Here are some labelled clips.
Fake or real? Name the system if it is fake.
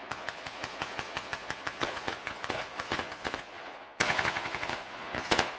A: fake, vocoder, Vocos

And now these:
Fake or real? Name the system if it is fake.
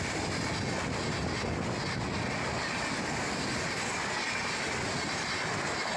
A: real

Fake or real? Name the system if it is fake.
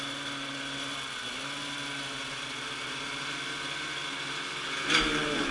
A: real